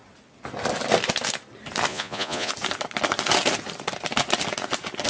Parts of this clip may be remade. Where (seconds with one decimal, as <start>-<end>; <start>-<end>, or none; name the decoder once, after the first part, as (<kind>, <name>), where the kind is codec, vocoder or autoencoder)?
1.9-2.5 (vocoder, Vocos)